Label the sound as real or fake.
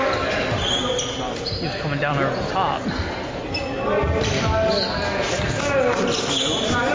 real